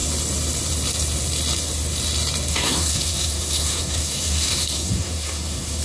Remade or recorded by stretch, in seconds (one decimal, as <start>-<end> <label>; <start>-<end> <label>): 0.0-2.5 recorded; 2.5-5.8 remade